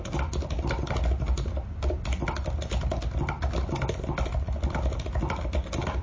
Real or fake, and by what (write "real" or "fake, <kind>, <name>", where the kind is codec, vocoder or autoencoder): real